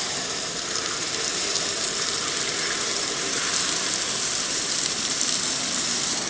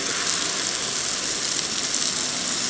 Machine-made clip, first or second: first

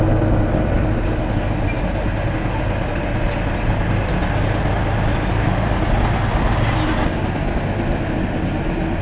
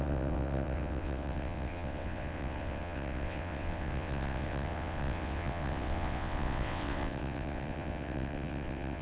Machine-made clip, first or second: second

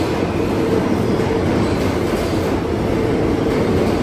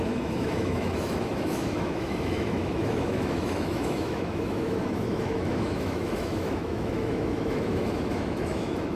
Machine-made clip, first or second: second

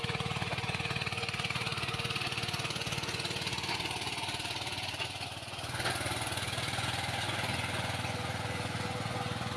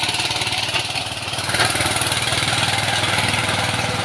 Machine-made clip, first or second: first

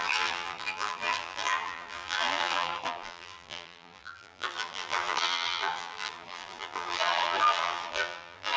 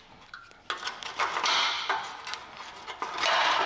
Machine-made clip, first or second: first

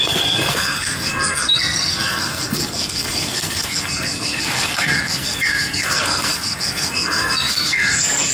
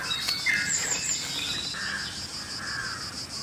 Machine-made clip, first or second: first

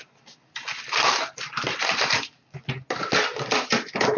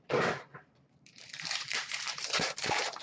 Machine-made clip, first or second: second